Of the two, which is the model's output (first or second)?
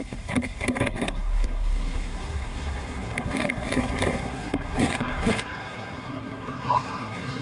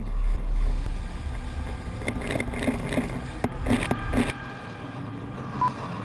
first